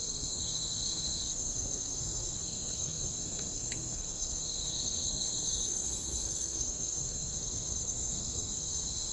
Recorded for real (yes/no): no